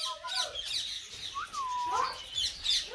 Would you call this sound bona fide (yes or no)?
yes